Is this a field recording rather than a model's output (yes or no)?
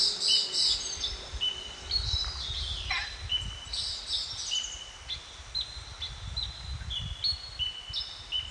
yes